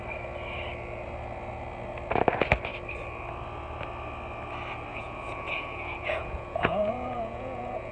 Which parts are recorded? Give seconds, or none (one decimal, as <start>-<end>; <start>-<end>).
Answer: 0.0-4.9